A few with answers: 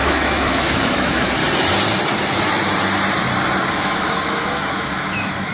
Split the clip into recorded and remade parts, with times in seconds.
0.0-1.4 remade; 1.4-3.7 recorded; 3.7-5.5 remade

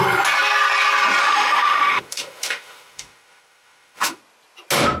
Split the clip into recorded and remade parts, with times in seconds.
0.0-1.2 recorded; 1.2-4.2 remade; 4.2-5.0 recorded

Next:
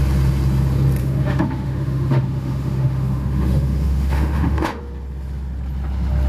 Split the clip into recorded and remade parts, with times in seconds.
0.0-1.0 recorded; 1.0-4.8 remade; 4.8-6.3 recorded

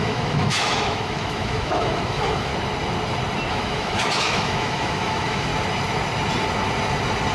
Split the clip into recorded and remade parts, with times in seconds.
0.0-2.5 remade; 2.5-3.5 recorded; 3.5-5.5 remade; 5.5-7.3 recorded

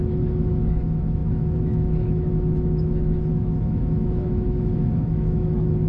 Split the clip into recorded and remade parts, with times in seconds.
0.0-5.9 remade

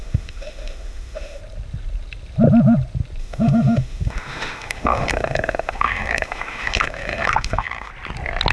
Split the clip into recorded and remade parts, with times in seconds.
0.0-1.4 remade; 1.4-3.2 recorded; 3.2-7.9 remade; 7.9-8.5 recorded

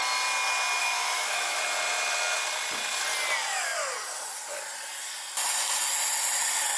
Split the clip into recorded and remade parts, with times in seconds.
0.0-0.8 recorded; 0.8-1.6 remade; 1.6-6.8 recorded